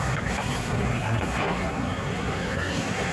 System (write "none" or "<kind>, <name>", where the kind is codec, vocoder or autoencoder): codec, SNAC